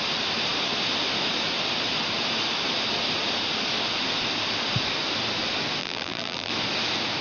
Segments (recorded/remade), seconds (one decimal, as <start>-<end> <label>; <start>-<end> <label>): 0.0-5.8 recorded; 5.8-6.5 remade; 6.5-7.2 recorded